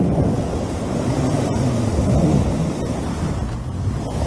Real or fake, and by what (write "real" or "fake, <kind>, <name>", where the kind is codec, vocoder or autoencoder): real